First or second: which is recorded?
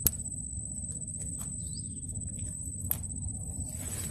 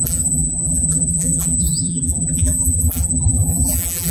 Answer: first